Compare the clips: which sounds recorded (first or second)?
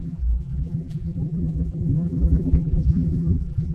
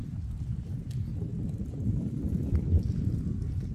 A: second